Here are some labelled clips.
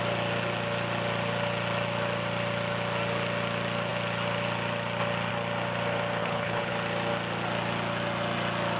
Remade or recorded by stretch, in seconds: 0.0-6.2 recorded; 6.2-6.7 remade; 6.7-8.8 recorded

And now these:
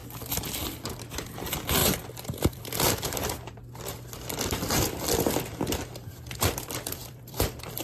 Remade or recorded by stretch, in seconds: 0.0-0.5 recorded; 0.5-1.8 remade; 1.8-2.4 recorded; 2.4-7.8 remade

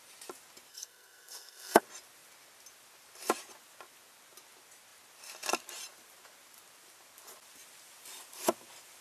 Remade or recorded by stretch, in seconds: 0.0-0.7 recorded; 0.7-1.8 remade; 1.8-9.0 recorded

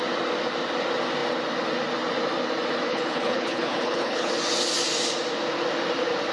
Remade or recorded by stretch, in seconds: 0.0-2.9 recorded; 2.9-4.3 remade; 4.3-6.3 recorded

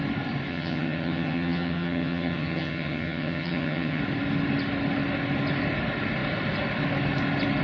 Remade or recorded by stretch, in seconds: 0.0-0.5 recorded; 0.5-4.0 remade; 4.0-7.6 recorded